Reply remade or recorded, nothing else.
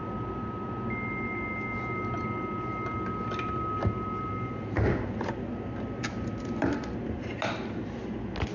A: recorded